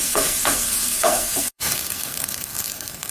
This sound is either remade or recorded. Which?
remade